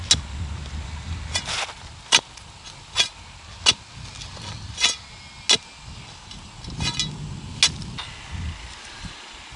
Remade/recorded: recorded